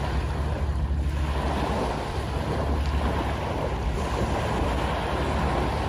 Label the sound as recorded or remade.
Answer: recorded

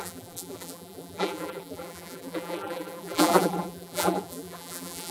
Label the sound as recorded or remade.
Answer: remade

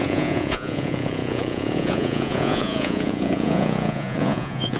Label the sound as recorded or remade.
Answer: remade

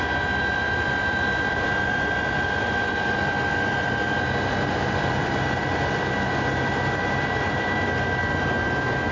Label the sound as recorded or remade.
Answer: remade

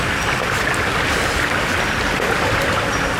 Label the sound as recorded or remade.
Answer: recorded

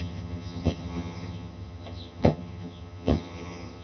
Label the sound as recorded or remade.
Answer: remade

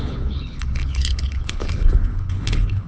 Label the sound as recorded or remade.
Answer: remade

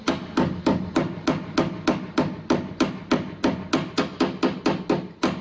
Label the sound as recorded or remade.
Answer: recorded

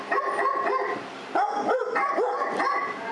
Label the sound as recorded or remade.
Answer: recorded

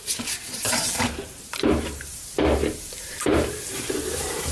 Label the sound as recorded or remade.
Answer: remade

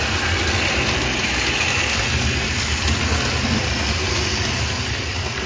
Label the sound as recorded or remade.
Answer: recorded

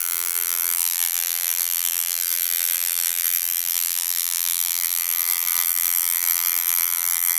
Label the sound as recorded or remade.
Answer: remade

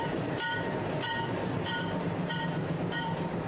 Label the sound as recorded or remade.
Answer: remade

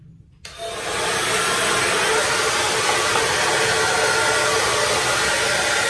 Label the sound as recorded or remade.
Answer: recorded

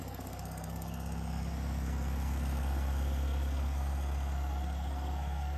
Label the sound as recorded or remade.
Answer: remade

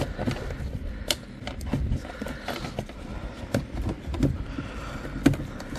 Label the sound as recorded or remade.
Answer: recorded